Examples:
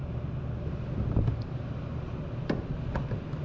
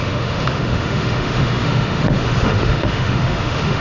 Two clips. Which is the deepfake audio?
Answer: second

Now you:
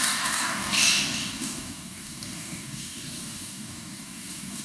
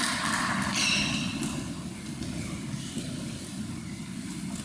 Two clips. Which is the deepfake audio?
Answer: first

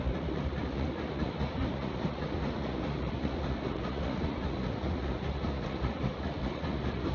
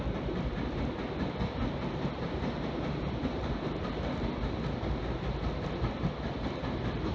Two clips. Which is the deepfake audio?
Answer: first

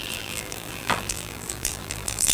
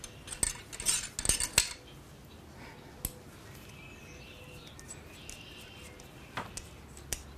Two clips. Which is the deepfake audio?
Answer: first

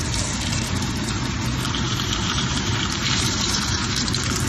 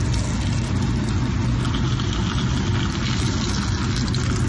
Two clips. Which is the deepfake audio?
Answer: first